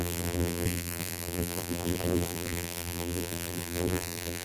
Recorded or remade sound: remade